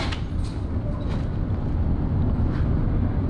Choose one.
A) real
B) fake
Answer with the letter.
A